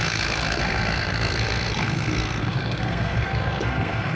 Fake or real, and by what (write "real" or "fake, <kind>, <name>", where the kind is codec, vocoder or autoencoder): fake, codec, SNAC